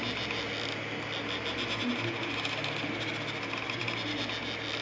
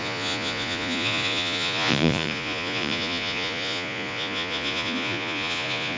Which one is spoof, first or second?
second